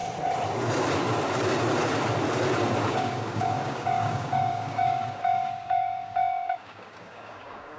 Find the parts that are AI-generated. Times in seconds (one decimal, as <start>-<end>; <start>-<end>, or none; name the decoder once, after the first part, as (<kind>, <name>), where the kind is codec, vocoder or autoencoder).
2.9-7.8 (codec, DAC)